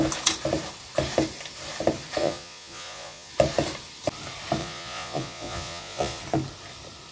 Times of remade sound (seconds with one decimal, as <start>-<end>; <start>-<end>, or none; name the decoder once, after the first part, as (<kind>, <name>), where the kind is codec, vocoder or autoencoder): 2.2-3.3 (vocoder, Vocos); 4.6-6.2